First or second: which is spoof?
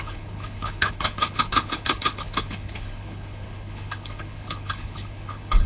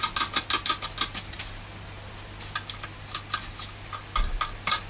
first